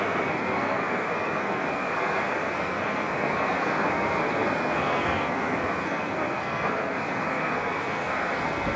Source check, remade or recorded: remade